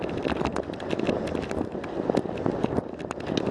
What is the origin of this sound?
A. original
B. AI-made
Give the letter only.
A